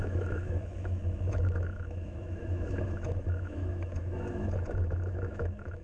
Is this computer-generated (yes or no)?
yes